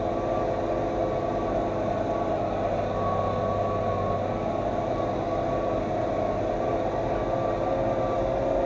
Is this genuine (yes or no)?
yes